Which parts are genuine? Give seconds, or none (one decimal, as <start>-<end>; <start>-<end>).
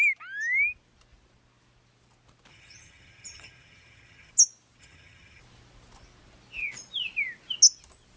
0.0-2.5; 4.3-4.8; 5.4-8.2